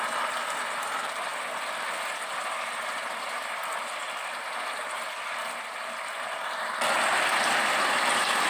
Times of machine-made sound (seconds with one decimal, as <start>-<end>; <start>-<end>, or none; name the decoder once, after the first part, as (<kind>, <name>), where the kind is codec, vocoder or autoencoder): none